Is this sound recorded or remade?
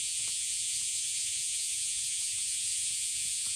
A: remade